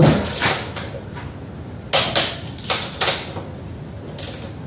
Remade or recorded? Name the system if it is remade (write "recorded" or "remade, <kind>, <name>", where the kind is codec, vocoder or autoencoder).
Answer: recorded